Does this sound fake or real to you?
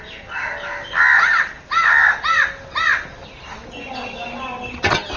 real